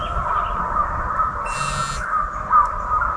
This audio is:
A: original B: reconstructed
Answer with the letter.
A